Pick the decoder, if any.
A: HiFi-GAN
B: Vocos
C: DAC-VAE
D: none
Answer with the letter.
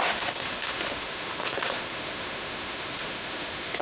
C